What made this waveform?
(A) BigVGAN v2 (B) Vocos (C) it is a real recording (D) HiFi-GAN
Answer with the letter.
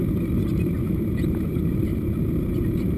A